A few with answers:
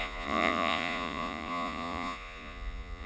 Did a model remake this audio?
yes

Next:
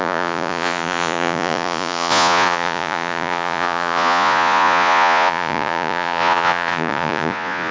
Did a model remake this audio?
yes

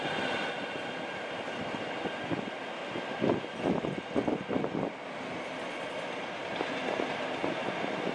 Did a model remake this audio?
no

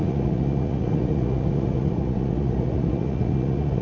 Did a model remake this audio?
yes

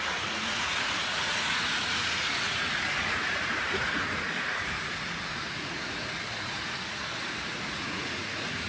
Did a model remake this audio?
yes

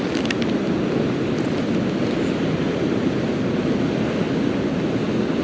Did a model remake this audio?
no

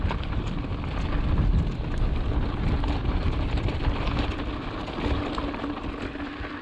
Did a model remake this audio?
no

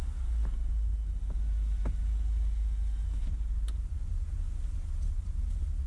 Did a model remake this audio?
no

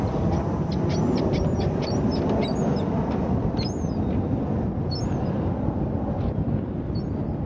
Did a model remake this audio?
no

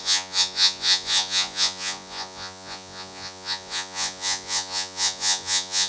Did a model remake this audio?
yes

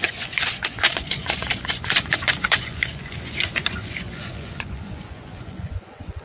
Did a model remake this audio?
yes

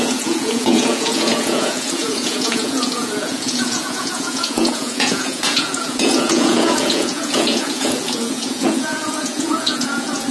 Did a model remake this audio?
yes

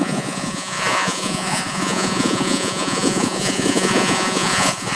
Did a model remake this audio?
yes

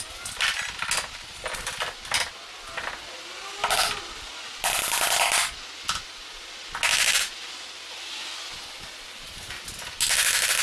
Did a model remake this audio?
no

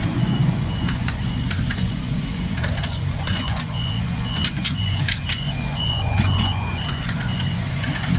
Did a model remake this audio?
yes